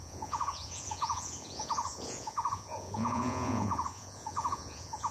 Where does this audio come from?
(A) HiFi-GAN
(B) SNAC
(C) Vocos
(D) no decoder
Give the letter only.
C